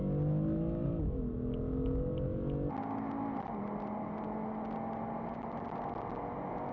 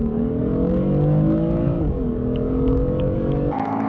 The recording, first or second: first